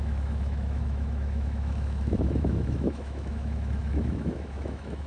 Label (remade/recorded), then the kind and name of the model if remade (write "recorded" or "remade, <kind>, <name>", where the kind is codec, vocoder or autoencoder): remade, autoencoder, DAC-VAE